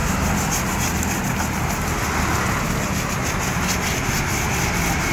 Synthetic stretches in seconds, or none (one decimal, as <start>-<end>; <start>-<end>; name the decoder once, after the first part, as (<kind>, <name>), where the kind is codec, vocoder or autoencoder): none

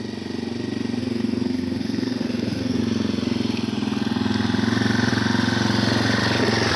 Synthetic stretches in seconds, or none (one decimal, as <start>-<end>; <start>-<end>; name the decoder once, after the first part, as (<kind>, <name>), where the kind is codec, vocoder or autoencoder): 1.0-2.8 (codec, SNAC)

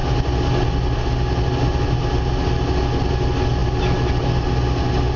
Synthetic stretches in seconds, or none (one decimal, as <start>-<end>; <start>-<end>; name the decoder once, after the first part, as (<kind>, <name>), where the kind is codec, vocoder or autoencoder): none